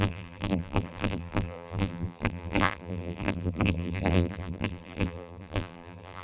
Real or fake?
fake